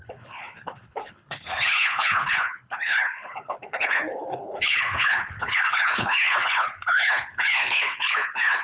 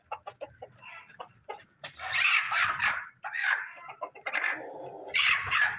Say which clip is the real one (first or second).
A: second